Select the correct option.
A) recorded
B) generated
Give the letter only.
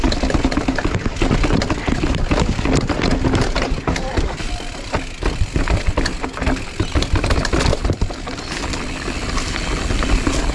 A